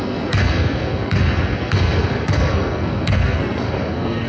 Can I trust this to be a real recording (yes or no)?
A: no